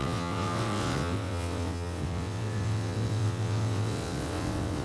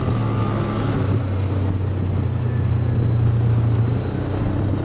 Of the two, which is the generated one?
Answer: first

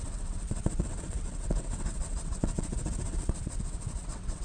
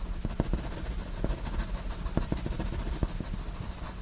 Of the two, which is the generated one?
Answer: first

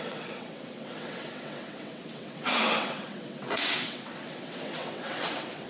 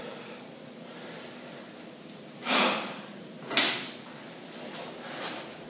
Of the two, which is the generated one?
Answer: first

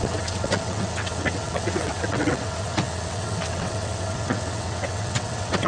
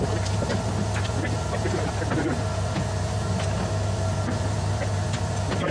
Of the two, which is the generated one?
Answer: first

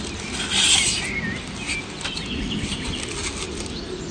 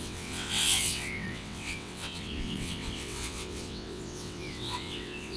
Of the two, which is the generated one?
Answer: second